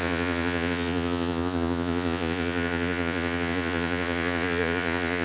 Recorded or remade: remade